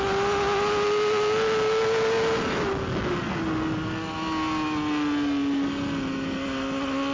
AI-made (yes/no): no